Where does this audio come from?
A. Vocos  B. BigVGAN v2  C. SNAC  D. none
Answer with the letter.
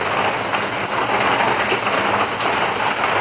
D